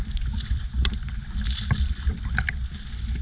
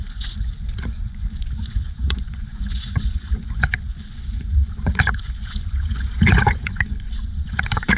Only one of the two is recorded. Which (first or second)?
first